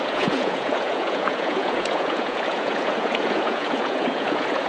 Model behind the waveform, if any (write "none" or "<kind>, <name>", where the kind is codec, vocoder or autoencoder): vocoder, Vocos